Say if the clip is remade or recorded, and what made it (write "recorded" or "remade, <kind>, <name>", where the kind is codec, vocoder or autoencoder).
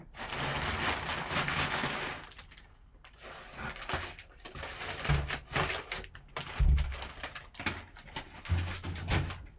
recorded